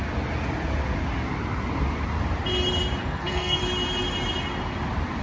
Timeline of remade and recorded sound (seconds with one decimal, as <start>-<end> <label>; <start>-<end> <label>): 0.0-3.0 recorded; 3.0-3.6 remade; 3.6-5.2 recorded